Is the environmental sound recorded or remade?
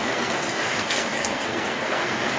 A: remade